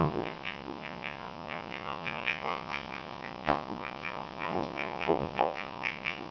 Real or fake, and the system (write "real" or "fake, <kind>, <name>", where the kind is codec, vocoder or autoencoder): fake, vocoder, Vocos